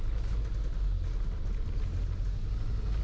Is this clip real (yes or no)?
yes